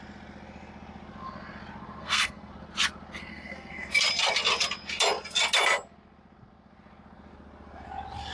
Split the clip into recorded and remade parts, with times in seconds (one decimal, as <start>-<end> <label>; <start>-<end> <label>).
0.0-2.0 recorded; 2.0-2.5 remade; 2.5-3.3 recorded; 3.3-3.9 remade; 3.9-8.3 recorded